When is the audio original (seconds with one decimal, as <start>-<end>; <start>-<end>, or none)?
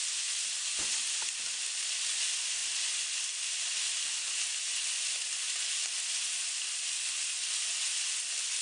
0.0-8.6